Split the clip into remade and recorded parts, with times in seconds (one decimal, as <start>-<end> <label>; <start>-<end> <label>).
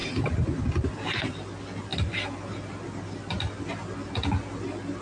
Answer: 0.0-1.9 recorded; 1.9-4.1 remade; 4.1-5.0 recorded